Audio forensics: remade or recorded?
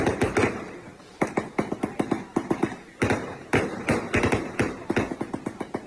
recorded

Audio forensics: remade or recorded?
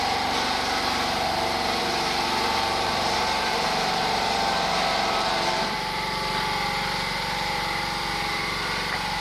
remade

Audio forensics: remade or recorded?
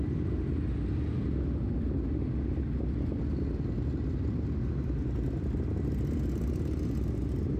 recorded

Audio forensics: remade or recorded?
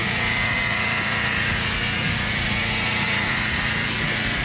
remade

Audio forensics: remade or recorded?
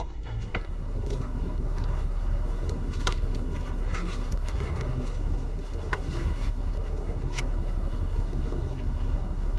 remade